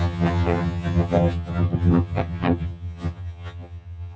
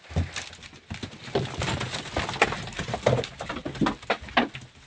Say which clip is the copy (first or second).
first